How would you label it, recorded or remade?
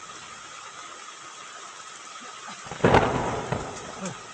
recorded